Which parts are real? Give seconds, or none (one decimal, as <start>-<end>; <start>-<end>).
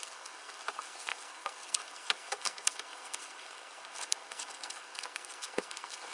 none